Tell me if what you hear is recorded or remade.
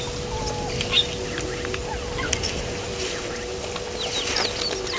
recorded